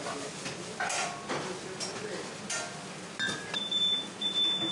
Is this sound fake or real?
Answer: real